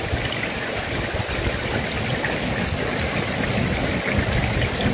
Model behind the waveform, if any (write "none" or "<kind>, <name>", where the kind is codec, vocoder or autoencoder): none